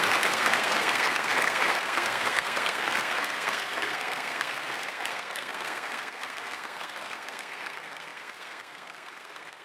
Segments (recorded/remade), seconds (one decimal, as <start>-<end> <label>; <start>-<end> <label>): 0.0-9.6 remade